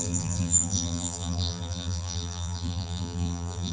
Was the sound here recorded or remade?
remade